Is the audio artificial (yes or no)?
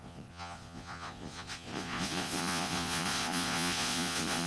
yes